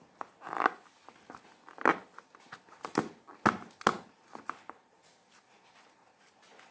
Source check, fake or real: real